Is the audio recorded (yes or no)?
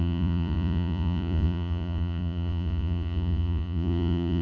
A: no